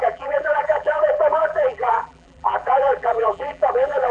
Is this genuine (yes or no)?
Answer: no